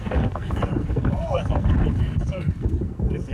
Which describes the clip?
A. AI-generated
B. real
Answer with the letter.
A